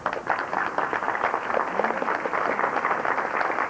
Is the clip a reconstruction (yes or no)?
no